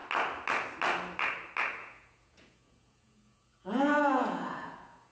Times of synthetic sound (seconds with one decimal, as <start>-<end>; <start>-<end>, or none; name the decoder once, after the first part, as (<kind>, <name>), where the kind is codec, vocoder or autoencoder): 1.8-5.1 (vocoder, Vocos)

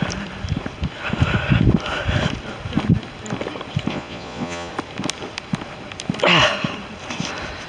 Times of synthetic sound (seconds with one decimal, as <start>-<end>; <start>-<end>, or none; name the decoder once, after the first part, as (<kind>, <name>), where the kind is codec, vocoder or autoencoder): 3.9-4.7 (vocoder, Vocos)

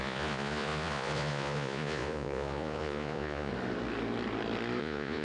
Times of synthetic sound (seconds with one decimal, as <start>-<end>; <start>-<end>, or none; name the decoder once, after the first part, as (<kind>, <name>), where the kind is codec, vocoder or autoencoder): 0.0-3.5 (vocoder, Vocos); 4.8-5.2

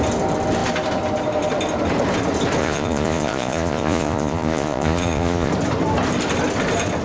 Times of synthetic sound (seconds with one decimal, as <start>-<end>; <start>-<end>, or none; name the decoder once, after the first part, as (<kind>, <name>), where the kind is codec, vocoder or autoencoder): 2.6-5.5 (vocoder, Vocos)

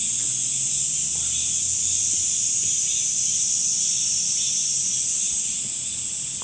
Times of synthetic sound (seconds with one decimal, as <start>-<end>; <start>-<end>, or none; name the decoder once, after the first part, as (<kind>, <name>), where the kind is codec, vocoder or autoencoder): none